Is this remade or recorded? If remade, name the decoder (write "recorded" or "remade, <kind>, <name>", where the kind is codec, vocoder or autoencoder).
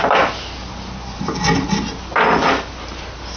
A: recorded